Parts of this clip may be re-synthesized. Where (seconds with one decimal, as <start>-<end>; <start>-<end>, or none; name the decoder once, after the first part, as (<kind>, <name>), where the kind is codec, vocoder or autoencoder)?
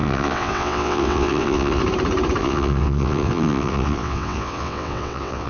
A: 0.0-1.8 (vocoder, WaveNeXt); 2.4-5.5